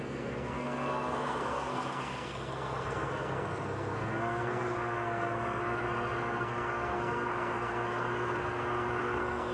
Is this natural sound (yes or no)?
no